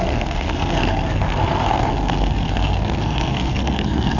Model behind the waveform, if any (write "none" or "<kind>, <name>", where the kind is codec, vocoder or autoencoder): codec, SNAC